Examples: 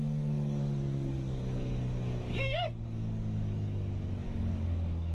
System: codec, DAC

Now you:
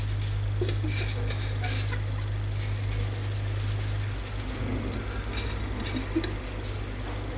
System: none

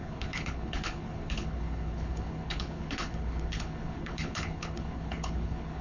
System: codec, HILCodec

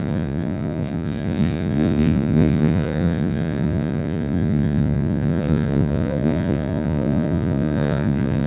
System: vocoder, Vocos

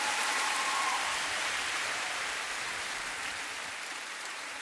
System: vocoder, BigVGAN v2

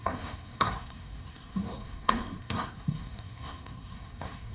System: codec, SNAC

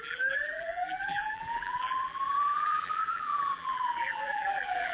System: vocoder, BigVGAN v2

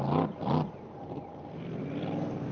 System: none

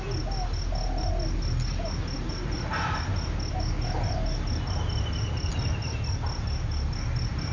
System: none